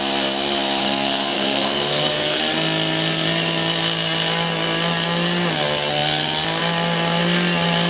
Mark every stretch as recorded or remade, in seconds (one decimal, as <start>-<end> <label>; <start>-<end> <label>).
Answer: 0.0-0.8 recorded; 0.8-2.4 remade; 2.4-7.9 recorded